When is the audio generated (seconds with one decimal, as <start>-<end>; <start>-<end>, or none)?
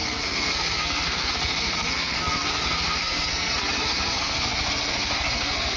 0.0-5.8